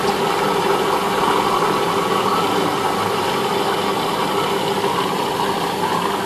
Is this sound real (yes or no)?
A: yes